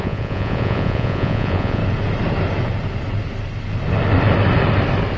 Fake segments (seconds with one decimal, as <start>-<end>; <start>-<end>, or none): 0.0-1.8